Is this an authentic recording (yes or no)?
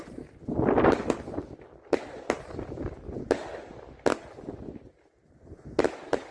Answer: yes